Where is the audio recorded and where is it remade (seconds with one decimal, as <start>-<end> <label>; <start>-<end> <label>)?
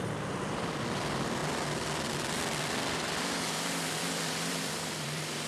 0.0-5.5 remade